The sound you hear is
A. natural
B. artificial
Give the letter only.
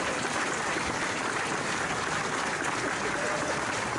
A